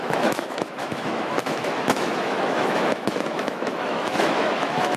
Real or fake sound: fake